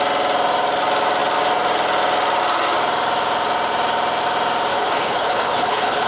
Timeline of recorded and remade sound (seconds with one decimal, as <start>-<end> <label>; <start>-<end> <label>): 0.0-4.7 recorded; 4.7-6.1 remade

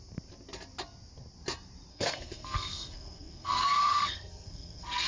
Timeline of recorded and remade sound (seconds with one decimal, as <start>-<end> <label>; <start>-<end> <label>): 0.0-1.9 recorded; 1.9-5.1 remade

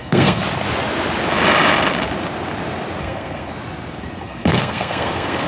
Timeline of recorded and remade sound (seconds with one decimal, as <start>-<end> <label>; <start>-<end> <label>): 0.0-0.4 remade; 0.4-3.0 recorded; 3.0-3.5 remade; 3.5-4.2 recorded; 4.2-5.5 remade

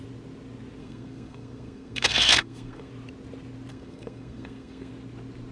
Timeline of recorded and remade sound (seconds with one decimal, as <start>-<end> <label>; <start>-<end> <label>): 0.0-0.8 recorded; 0.8-2.9 remade; 2.9-3.7 recorded; 3.7-4.9 remade; 4.9-5.5 recorded

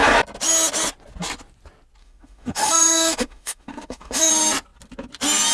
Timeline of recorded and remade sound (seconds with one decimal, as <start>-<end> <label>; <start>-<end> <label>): 0.0-2.0 recorded; 2.0-4.3 remade; 4.3-5.5 recorded

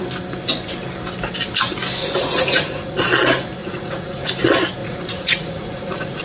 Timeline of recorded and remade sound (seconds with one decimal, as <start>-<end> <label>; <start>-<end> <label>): 0.0-2.0 recorded; 2.0-3.0 remade; 3.0-3.6 recorded; 3.6-4.3 remade; 4.3-4.8 recorded; 4.8-6.2 remade

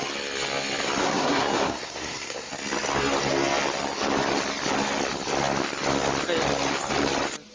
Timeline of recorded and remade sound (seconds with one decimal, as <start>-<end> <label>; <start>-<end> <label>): 0.0-1.0 recorded; 1.0-2.5 remade; 2.5-7.5 recorded

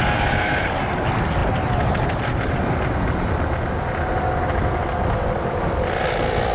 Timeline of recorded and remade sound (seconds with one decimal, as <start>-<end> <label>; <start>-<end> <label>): 0.0-6.5 recorded